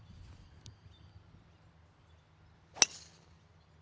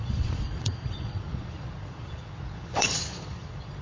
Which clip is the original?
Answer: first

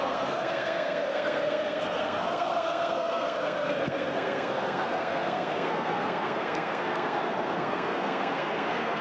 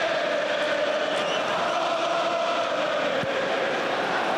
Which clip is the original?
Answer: second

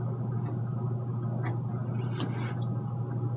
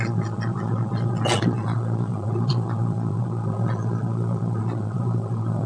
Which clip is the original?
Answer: first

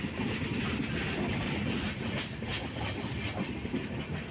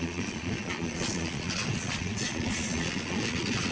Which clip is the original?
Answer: first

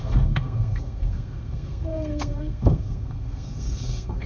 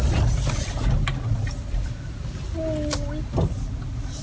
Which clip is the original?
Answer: second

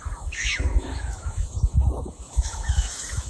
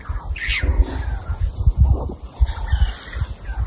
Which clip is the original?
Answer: second